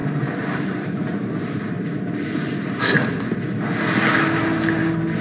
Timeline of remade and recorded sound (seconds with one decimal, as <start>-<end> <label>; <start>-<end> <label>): 0.0-3.1 remade; 3.1-5.2 recorded